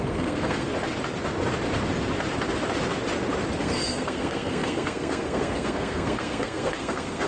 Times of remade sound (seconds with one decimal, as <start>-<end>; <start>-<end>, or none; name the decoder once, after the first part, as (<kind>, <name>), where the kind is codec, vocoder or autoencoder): 0.0-0.7 (codec, SNAC); 3.6-7.3